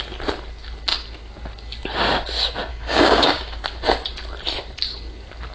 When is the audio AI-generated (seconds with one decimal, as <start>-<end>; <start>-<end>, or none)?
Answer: 2.7-3.6